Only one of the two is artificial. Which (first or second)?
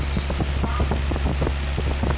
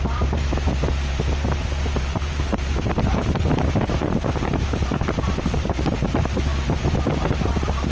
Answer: second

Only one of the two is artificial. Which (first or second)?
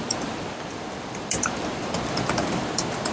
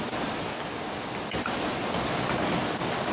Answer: first